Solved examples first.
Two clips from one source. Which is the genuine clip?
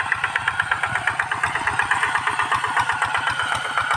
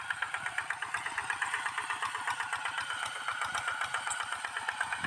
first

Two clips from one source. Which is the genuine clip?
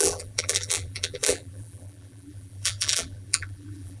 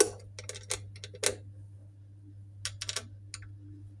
second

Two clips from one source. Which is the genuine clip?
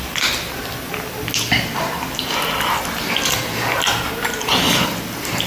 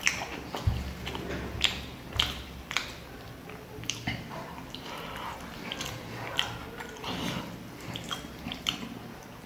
first